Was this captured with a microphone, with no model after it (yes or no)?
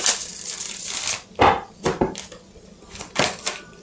yes